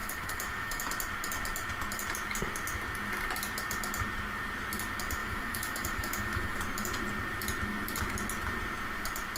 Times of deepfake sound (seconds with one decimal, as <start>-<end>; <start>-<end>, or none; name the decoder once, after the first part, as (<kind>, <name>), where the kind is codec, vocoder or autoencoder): 0.0-0.9 (autoencoder, DAC-VAE); 5.2-6.6